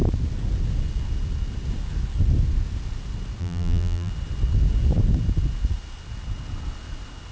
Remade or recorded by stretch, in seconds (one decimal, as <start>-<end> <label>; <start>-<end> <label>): 0.0-3.4 recorded; 3.4-4.1 remade; 4.1-7.3 recorded